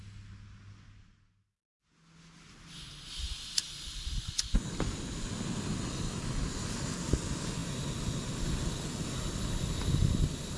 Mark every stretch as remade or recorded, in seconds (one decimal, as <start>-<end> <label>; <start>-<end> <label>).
0.0-10.6 recorded